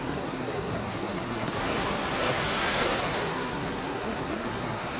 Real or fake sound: fake